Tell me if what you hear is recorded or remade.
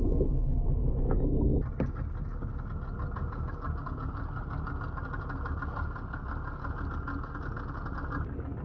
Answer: recorded